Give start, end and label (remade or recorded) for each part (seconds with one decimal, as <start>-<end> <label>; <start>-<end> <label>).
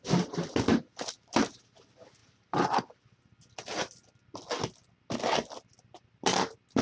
0.0-6.8 recorded